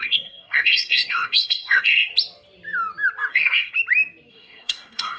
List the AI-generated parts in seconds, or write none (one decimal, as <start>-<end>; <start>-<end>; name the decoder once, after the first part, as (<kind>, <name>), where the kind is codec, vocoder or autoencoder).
0.0-2.1 (codec, SNAC); 3.3-3.7; 4.3-5.2